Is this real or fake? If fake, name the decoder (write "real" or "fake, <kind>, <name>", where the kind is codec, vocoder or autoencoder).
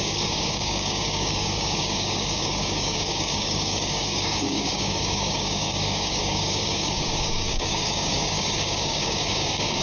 fake, codec, DAC